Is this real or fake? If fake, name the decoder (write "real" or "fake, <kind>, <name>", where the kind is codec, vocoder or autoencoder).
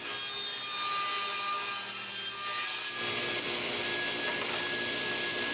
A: real